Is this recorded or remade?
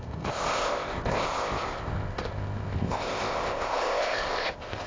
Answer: remade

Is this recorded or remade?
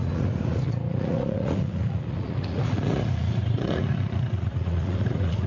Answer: remade